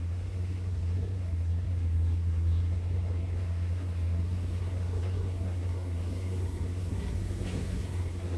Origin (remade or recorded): remade